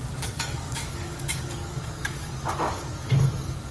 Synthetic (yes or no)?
yes